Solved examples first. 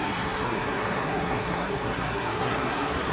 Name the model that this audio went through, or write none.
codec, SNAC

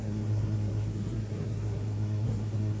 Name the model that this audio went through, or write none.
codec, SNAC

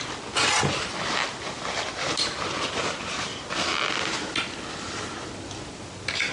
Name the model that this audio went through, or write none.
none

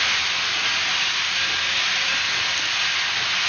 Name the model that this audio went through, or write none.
none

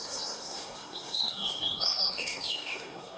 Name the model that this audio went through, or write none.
codec, SNAC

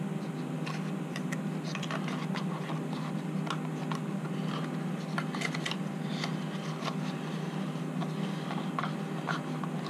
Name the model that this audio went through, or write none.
none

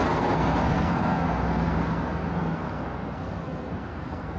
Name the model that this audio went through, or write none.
codec, SNAC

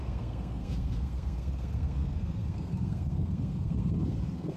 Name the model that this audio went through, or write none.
codec, SNAC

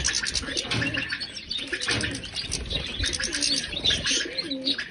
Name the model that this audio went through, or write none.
none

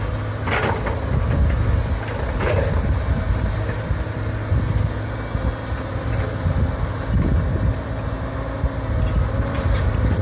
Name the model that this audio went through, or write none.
none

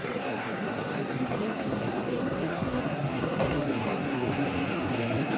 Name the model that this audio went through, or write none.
codec, SNAC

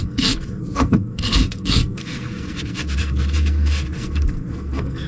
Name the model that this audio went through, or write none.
codec, SNAC